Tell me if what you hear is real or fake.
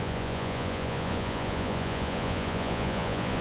fake